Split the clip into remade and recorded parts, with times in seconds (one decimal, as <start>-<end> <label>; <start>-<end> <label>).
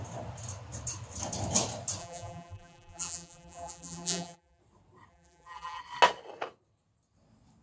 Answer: 0.0-2.0 recorded; 2.0-4.6 remade; 4.6-5.1 recorded; 5.1-5.8 remade; 5.8-7.6 recorded